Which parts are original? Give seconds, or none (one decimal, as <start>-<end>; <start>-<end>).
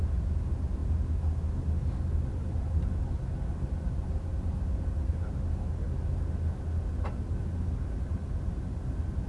0.0-9.3